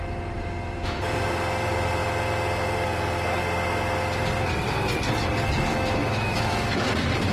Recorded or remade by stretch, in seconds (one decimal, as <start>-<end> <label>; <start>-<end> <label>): 0.0-5.7 recorded; 5.7-6.8 remade; 6.8-7.3 recorded